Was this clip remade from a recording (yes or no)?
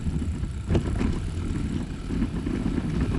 no